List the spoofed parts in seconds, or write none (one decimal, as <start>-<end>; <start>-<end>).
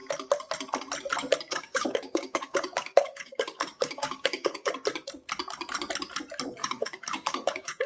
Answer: 1.5-4.7; 6.6-7.9